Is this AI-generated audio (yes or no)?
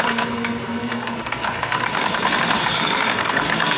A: yes